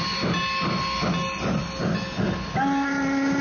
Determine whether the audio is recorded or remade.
recorded